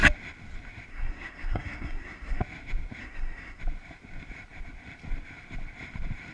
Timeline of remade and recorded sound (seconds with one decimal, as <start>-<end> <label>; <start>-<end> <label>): 0.0-0.9 recorded; 0.9-2.4 remade; 2.4-3.0 recorded; 3.0-3.6 remade; 3.6-6.3 recorded